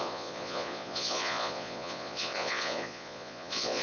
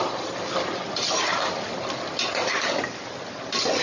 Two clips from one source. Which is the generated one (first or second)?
first